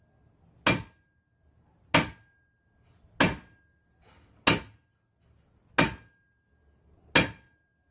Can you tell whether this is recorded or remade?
recorded